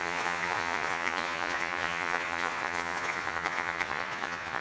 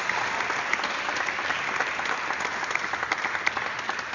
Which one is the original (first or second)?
second